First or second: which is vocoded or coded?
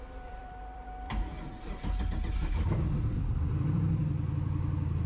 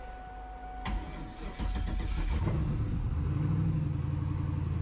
first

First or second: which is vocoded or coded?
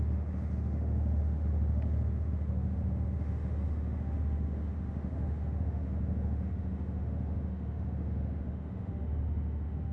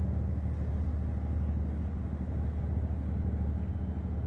first